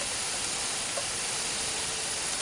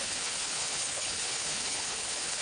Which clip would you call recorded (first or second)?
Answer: first